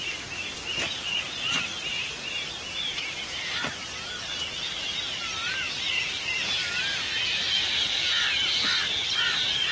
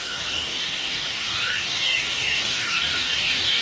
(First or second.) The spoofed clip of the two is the second